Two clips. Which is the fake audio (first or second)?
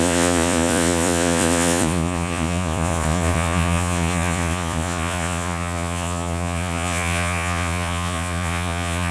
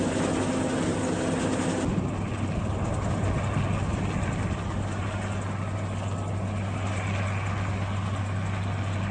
first